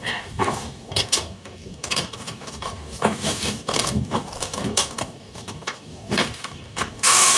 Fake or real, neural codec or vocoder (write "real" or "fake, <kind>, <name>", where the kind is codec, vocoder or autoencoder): fake, codec, DAC